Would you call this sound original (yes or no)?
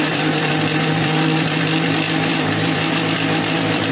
no